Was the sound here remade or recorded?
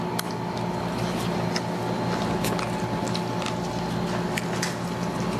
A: recorded